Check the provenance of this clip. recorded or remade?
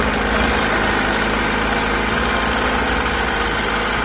recorded